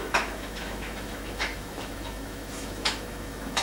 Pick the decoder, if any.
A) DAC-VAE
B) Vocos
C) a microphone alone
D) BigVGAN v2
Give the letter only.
A